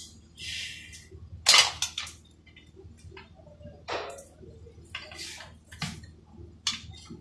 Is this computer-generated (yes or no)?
no